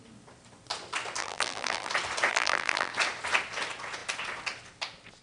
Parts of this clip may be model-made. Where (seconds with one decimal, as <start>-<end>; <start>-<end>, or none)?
1.2-1.9; 2.3-2.9